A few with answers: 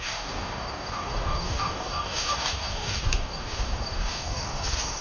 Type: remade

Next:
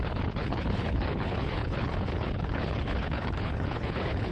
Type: remade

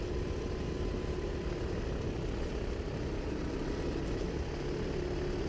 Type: recorded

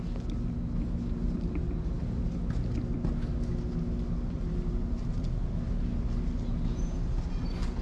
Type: recorded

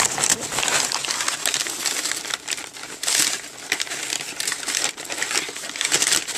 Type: recorded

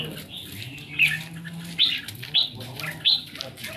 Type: recorded